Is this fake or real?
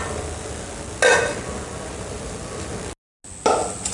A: real